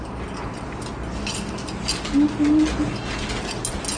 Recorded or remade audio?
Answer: recorded